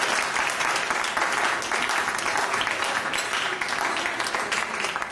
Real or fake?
real